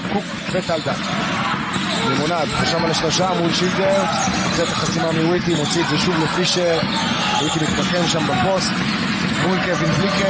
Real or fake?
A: real